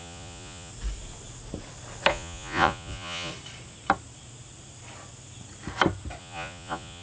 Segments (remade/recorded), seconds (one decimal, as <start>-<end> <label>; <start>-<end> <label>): 0.0-0.7 remade; 0.7-2.1 recorded; 2.1-3.3 remade; 3.3-6.2 recorded; 6.2-7.0 remade